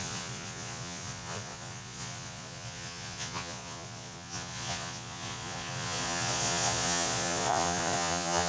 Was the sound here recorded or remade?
remade